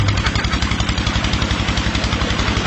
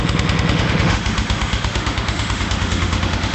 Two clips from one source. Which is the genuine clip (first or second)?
first